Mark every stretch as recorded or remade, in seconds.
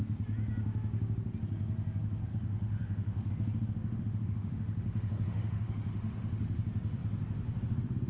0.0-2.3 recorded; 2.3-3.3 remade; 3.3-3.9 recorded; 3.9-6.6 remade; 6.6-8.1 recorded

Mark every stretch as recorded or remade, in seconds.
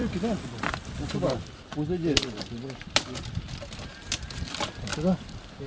0.0-5.7 recorded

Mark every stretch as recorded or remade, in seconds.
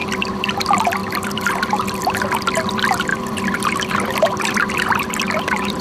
0.0-0.6 remade; 0.6-1.0 recorded; 1.0-2.7 remade; 2.7-3.1 recorded; 3.1-5.0 remade; 5.0-5.8 recorded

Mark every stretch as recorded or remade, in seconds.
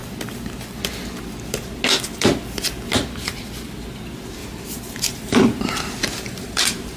0.0-4.4 recorded; 4.4-7.0 remade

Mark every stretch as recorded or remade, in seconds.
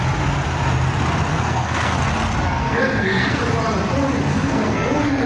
0.0-1.3 recorded; 1.3-2.0 remade; 2.0-2.6 recorded; 2.6-3.4 remade; 3.4-4.3 recorded; 4.3-5.3 remade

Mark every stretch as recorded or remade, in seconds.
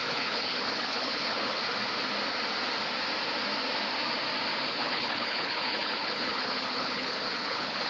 0.0-1.6 remade; 1.6-4.7 recorded; 4.7-7.9 remade